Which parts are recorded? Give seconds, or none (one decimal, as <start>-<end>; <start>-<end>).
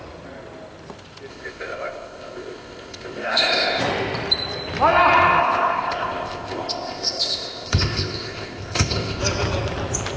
0.0-1.3; 3.8-5.4; 9.2-10.2